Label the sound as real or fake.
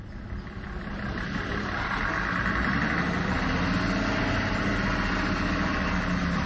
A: real